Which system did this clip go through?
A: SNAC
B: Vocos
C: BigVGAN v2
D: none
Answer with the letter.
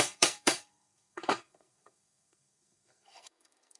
A